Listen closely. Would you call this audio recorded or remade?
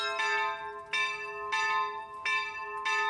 recorded